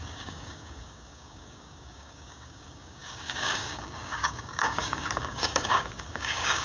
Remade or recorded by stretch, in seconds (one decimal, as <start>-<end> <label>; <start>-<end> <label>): 0.0-6.6 remade